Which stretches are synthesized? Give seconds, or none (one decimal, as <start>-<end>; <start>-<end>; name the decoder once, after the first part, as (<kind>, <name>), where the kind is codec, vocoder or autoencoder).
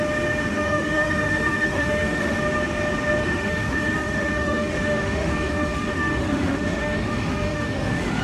0.5-2.4 (autoencoder, DAC-VAE); 3.2-8.2